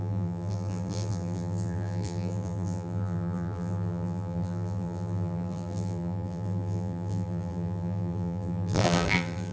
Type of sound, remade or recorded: remade